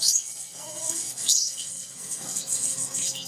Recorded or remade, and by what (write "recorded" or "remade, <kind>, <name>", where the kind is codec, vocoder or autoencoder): remade, codec, SNAC